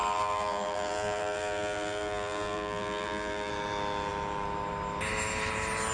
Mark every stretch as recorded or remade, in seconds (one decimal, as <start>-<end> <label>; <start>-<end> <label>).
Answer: 0.0-3.5 remade; 3.5-5.9 recorded